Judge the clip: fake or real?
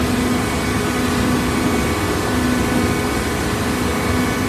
real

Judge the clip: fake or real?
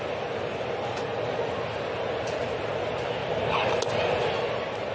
real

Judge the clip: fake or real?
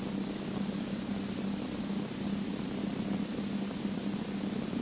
real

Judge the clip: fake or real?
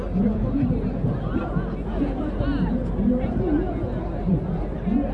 real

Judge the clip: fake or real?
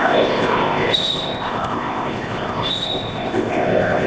fake